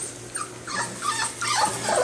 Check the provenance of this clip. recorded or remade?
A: recorded